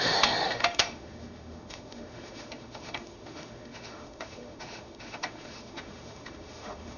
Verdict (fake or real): fake